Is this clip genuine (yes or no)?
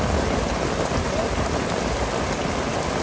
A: yes